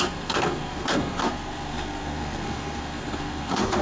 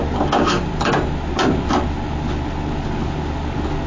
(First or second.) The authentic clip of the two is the second